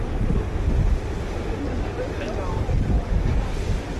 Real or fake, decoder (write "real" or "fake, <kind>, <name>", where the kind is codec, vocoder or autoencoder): real